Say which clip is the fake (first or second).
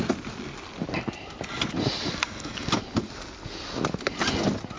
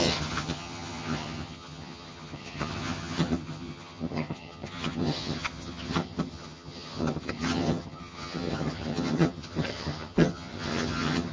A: second